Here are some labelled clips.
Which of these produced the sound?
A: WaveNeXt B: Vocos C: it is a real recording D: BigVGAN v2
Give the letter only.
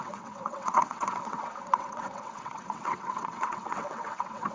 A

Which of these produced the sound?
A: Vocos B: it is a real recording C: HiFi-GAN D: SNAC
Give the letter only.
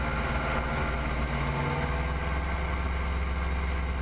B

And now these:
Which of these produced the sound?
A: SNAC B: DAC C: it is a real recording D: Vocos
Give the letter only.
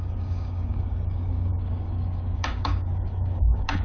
B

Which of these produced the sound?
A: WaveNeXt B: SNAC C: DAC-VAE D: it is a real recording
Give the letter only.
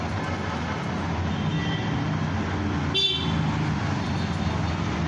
D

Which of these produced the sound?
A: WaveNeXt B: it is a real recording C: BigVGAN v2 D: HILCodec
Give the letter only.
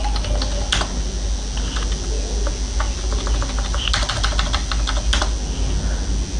B